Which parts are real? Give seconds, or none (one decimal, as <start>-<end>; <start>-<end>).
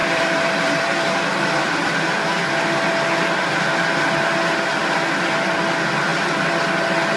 2.5-4.8; 5.5-6.1; 6.7-7.2